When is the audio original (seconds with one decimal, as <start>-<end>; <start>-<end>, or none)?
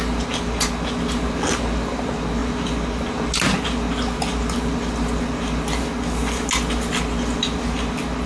0.0-8.3